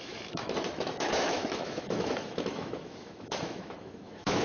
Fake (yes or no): yes